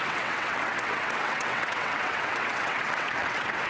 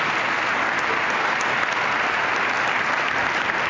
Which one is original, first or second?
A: second